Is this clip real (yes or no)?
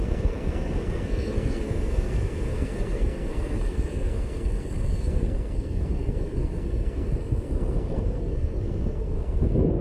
no